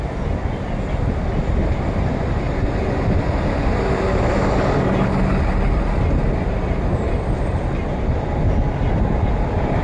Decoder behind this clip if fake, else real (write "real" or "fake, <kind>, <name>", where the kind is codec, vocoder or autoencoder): real